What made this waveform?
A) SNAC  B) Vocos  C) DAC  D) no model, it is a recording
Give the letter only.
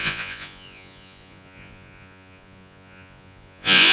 B